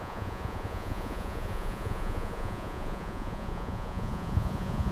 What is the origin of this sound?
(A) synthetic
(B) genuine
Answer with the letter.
A